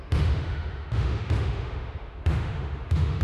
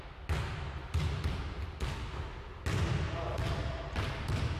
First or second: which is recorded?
second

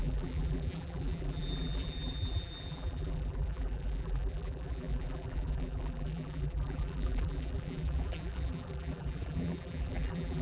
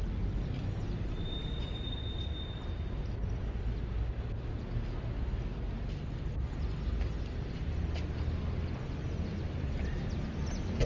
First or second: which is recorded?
second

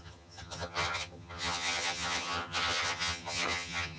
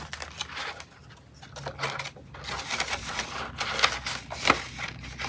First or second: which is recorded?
second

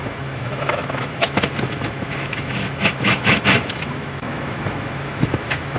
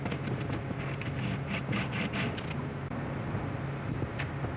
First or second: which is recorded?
second